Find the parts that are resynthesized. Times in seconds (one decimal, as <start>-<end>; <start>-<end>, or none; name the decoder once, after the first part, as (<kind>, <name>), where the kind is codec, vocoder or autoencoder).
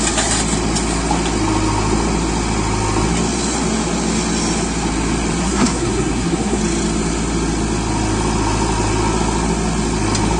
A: 5.4-6.6 (codec, SNAC)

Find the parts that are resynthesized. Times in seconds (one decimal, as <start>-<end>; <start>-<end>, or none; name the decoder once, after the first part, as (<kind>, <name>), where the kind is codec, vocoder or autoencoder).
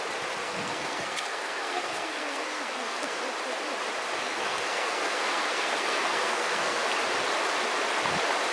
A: 0.4-3.2 (codec, SNAC); 4.2-6.9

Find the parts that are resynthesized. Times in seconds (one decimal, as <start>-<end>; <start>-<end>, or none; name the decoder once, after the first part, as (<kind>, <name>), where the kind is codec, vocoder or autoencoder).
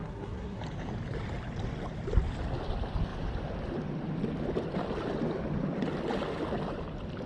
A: 0.0-0.6 (codec, SNAC)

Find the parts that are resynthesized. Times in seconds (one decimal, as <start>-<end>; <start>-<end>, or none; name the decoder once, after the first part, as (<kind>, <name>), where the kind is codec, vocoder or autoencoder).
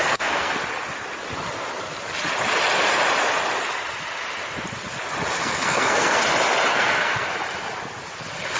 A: 0.0-0.5 (codec, SNAC); 5.4-6.2; 6.7-7.3